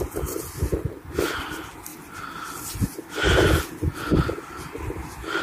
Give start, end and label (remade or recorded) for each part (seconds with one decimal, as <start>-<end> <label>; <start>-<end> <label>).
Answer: 0.0-5.4 recorded